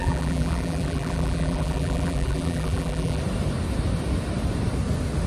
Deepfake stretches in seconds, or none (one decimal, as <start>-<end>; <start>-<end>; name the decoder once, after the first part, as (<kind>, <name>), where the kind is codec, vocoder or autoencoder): 0.0-3.2 (vocoder, BigVGAN v2)